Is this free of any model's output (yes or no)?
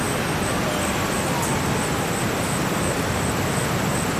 yes